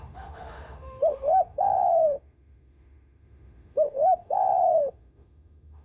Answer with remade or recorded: remade